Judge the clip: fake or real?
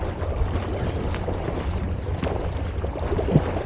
real